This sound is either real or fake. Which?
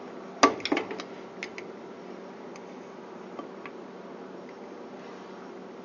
real